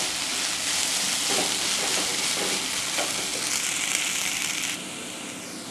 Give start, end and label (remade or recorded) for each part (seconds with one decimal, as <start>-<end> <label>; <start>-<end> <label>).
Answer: 0.0-5.7 recorded